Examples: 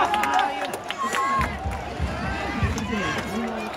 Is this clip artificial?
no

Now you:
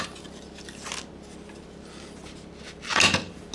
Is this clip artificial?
no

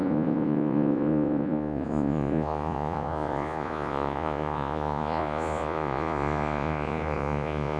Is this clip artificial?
yes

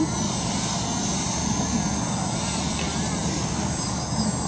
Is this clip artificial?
no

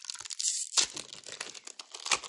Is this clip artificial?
no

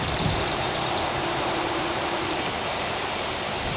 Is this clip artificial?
yes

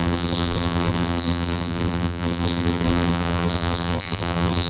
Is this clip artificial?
yes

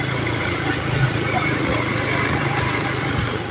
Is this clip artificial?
yes